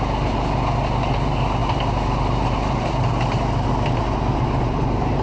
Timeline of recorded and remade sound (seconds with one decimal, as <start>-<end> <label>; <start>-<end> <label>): 0.0-1.6 recorded; 1.6-3.1 remade; 3.1-5.2 recorded